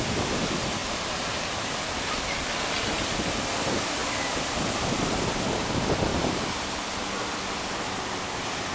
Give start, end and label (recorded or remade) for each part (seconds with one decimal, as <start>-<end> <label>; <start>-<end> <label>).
0.0-0.8 recorded; 0.8-1.8 remade; 1.8-6.1 recorded; 6.1-6.8 remade; 6.8-8.7 recorded